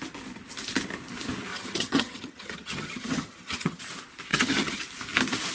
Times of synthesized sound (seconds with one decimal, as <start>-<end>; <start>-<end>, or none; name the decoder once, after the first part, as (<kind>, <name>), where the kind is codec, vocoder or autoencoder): 1.5-3.8 (vocoder, HiFi-GAN); 4.3-4.8